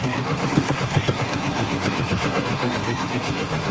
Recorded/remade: remade